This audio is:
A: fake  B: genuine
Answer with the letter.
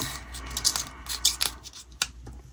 B